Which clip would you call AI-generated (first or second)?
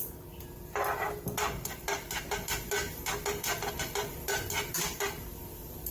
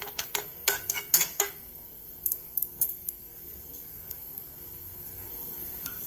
second